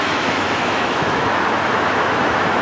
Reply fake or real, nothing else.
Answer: fake